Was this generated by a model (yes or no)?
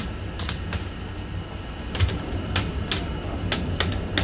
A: no